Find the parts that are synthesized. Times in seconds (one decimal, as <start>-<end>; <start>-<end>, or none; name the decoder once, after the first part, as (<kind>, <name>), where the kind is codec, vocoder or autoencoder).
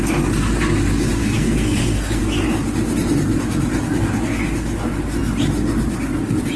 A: 1.2-2.2 (codec, SNAC)